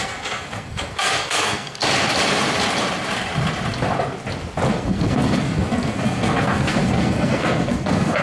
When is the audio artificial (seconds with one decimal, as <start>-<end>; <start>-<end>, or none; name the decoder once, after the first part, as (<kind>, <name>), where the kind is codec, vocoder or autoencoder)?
0.0-1.8 (codec, SNAC); 4.7-8.2